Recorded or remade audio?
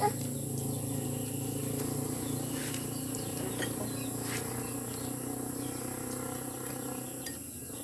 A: recorded